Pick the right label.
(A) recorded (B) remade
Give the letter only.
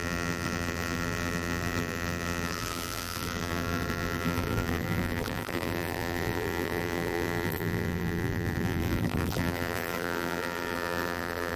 B